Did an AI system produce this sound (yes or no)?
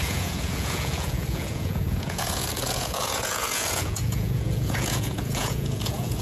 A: yes